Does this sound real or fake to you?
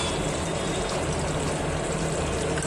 real